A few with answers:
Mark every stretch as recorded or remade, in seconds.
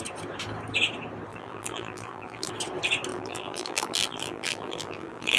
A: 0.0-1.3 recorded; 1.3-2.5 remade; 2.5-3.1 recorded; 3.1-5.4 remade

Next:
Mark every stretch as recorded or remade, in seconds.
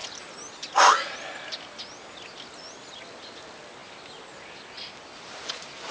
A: 0.0-5.9 recorded